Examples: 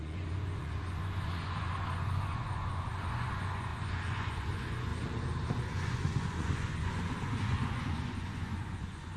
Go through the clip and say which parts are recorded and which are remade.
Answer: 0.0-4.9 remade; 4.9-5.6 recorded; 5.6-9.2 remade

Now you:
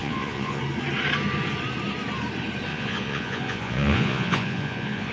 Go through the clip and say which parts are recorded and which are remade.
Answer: 0.0-0.6 remade; 0.6-2.7 recorded; 2.7-5.1 remade

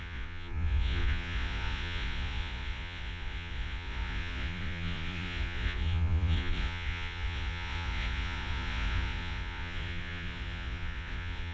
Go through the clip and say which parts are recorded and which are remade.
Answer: 0.0-11.5 remade

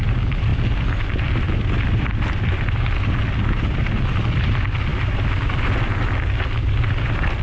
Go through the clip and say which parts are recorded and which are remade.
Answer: 0.0-7.4 recorded

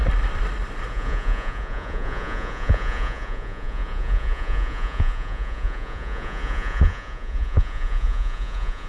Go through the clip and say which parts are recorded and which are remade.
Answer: 0.0-0.9 recorded; 0.9-8.9 remade